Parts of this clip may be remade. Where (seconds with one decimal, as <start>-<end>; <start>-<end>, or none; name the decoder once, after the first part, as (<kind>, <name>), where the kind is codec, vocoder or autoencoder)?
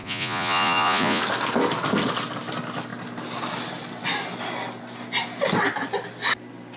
0.0-1.2 (vocoder, Vocos)